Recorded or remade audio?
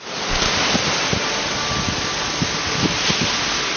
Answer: recorded